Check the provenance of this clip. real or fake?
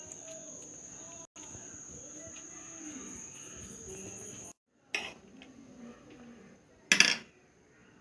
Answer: real